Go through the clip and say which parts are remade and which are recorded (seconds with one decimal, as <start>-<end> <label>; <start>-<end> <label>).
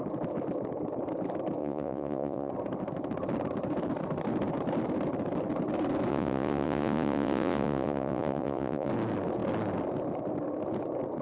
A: 0.0-1.6 recorded; 1.6-2.5 remade; 2.5-6.1 recorded; 6.1-8.9 remade; 8.9-11.2 recorded